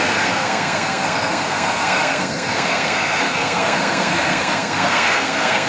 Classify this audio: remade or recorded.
remade